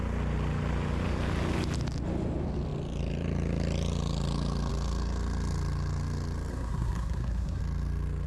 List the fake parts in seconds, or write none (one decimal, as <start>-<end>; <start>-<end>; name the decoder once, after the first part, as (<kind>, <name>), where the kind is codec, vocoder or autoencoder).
6.5-7.6 (codec, SNAC)